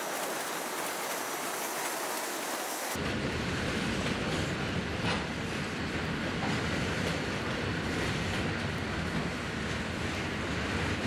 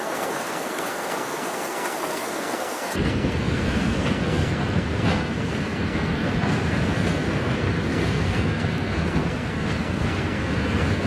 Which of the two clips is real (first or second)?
first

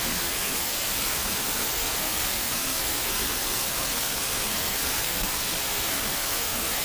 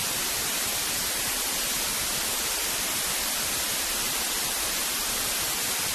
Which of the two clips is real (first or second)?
second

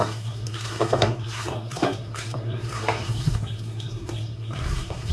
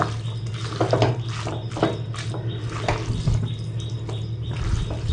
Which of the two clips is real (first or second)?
second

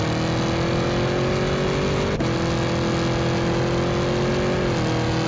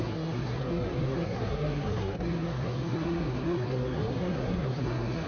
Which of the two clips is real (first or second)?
first